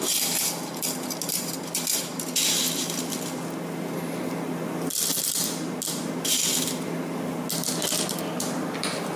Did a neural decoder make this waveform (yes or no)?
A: no